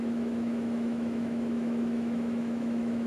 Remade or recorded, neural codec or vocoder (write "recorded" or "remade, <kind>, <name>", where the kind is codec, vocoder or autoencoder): remade, autoencoder, DAC-VAE